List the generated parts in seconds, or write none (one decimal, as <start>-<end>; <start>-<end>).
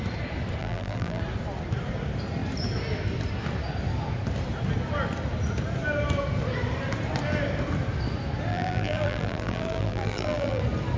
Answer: 0.6-1.2; 8.5-10.6